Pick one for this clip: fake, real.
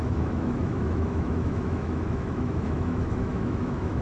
fake